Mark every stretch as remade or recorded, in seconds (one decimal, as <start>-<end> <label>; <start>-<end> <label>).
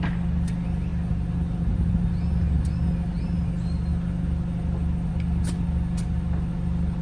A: 0.0-7.0 recorded